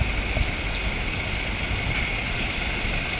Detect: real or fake real